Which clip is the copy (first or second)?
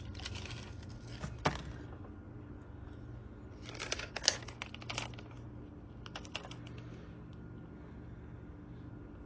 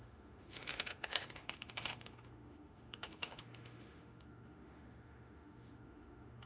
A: second